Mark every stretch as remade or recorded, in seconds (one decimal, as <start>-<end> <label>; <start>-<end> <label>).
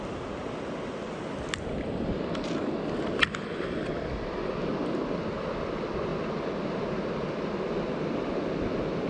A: 0.0-9.1 recorded